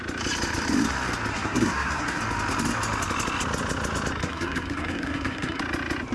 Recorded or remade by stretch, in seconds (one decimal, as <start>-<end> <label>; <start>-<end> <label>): 0.0-1.3 recorded; 1.3-2.2 remade; 2.2-4.2 recorded; 4.2-5.6 remade; 5.6-6.1 recorded